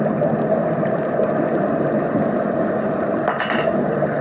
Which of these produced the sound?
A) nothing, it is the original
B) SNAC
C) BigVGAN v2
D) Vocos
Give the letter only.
A